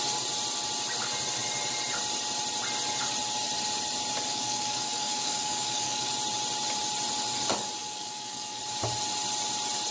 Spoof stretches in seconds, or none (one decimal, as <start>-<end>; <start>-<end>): 4.3-6.1; 7.8-8.6